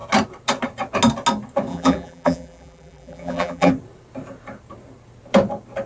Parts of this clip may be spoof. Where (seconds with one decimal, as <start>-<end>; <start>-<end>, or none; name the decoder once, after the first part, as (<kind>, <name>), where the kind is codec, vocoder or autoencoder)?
1.7-3.7 (vocoder, BigVGAN v2)